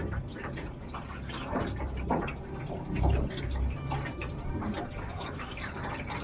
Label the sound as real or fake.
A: fake